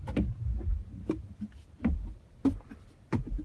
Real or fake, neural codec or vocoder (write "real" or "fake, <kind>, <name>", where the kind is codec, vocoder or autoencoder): real